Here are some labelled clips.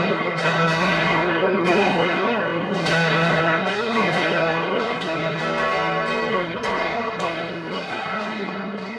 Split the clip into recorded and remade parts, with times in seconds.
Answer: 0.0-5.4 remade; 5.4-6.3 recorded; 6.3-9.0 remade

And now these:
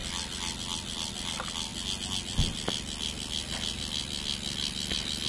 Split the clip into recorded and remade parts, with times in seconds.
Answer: 0.0-5.3 recorded

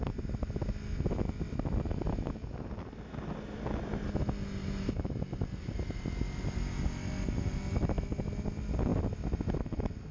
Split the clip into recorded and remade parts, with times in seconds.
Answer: 0.0-10.1 recorded

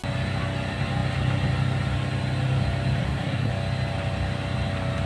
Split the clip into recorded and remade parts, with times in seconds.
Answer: 0.0-3.0 recorded; 3.0-3.5 remade; 3.5-5.1 recorded

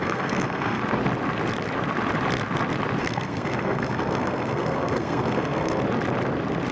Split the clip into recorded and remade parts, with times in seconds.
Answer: 0.0-0.8 remade; 0.8-3.0 recorded; 3.0-5.8 remade; 5.8-6.7 recorded

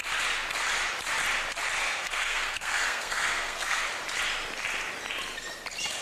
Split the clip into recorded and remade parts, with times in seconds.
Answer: 0.0-1.8 recorded; 1.8-3.8 remade; 3.8-6.0 recorded

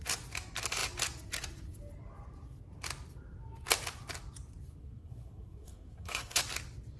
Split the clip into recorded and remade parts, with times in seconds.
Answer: 0.0-4.8 recorded; 4.8-6.4 remade; 6.4-7.0 recorded

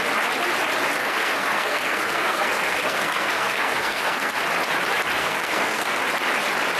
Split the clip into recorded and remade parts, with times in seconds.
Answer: 0.0-1.0 recorded; 1.0-4.4 remade; 4.4-5.2 recorded; 5.2-6.0 remade; 6.0-6.8 recorded